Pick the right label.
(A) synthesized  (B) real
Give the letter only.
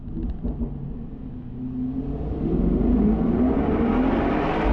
B